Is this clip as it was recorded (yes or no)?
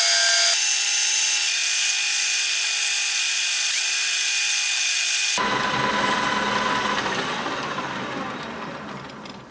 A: yes